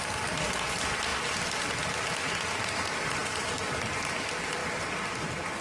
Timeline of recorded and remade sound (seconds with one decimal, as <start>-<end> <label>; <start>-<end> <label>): 0.0-5.6 recorded

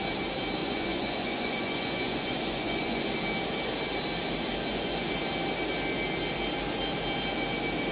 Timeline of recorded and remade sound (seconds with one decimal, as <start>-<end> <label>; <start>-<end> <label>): 0.0-0.6 recorded; 0.6-3.1 remade; 3.1-4.7 recorded; 4.7-5.2 remade; 5.2-7.9 recorded